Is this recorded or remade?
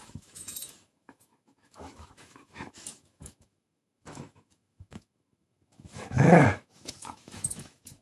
remade